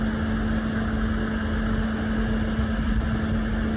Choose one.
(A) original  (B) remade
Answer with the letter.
A